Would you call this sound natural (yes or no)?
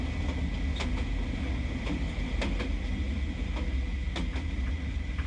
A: yes